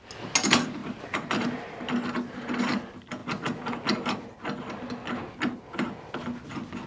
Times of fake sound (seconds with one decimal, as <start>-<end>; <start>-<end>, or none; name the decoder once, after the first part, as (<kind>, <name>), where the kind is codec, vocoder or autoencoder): none